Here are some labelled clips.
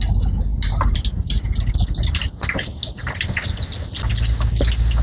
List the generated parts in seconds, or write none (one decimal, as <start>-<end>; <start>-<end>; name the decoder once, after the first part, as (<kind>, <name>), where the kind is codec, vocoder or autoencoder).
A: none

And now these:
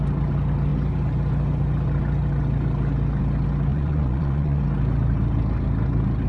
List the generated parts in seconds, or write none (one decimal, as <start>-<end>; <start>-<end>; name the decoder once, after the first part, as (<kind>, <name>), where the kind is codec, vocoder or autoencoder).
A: 3.7-4.6 (vocoder, Vocos)

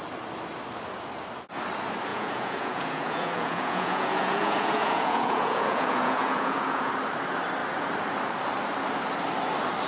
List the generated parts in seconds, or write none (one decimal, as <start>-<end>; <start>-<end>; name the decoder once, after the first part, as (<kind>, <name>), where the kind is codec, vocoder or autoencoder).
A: 2.1-6.9 (vocoder, Vocos)